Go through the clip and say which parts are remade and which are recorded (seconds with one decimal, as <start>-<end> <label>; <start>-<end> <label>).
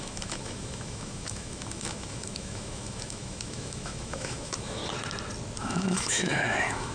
0.0-4.8 remade; 4.8-5.6 recorded; 5.6-6.9 remade